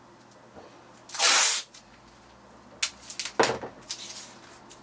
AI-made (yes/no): no